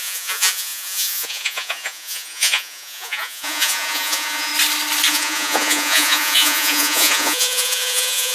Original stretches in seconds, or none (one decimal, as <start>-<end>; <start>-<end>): 4.5-5.1